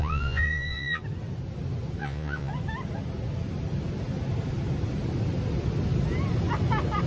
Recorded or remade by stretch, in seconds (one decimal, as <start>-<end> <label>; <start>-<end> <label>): 0.0-1.0 remade; 1.0-2.0 recorded; 2.0-2.5 remade; 2.5-7.1 recorded